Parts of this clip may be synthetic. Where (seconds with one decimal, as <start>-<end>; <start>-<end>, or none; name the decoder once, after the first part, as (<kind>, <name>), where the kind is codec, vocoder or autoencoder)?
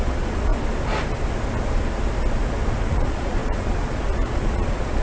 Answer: 0.0-0.5 (vocoder, Vocos); 2.9-5.0